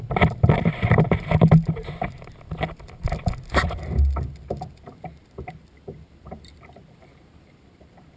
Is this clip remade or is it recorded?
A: remade